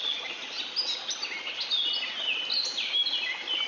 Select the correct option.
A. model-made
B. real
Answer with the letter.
B